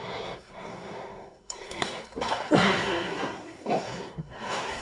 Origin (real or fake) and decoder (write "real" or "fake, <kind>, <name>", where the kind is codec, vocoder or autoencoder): fake, codec, SNAC